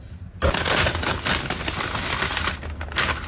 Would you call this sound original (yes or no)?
yes